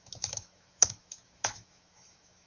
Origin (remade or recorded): remade